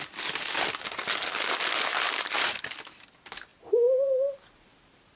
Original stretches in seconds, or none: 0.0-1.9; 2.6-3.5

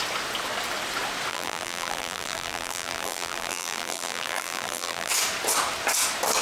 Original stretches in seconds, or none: 0.0-1.3; 5.1-6.4

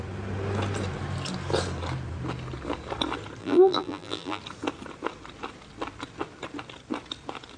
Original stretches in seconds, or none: 0.0-3.4; 4.4-7.6

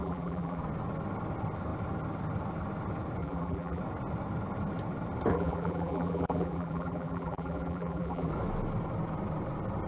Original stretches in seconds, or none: 0.6-3.2; 3.8-5.3; 8.3-9.9

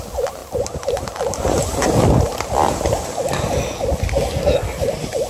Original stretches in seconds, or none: 0.0-0.4; 3.6-5.3

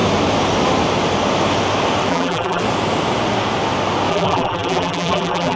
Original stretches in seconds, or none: 0.0-2.1; 2.6-4.1